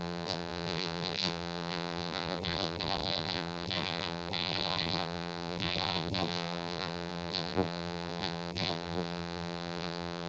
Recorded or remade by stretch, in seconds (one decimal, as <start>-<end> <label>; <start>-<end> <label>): 0.0-10.3 remade